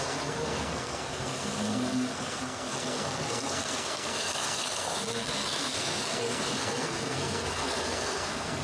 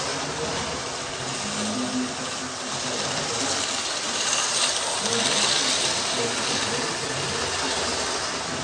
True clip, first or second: second